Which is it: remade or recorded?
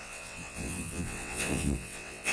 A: remade